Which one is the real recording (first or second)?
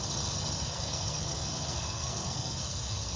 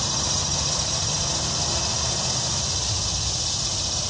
second